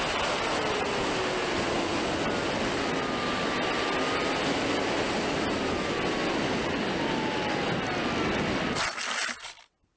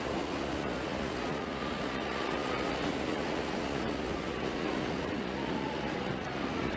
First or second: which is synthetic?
second